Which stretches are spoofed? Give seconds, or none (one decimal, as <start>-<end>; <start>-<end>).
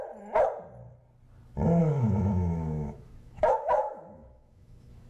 1.8-5.1